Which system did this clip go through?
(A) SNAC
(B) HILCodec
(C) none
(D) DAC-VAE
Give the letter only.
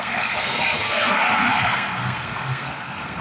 A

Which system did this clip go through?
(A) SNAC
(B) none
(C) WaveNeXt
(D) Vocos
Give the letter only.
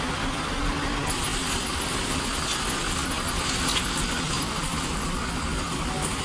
B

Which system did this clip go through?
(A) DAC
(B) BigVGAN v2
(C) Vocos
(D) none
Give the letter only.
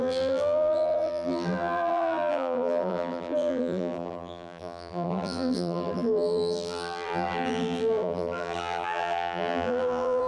B